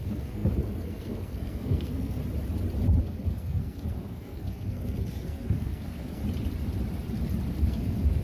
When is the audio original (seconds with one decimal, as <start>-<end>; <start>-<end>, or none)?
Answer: 2.2-3.0; 6.2-7.6